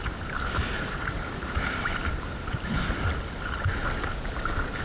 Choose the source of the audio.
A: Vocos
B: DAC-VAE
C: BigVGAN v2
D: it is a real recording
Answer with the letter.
D